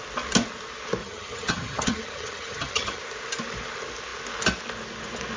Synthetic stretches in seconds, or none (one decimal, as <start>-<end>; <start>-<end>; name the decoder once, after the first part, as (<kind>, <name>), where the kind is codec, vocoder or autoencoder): 1.0-3.0 (vocoder, HiFi-GAN)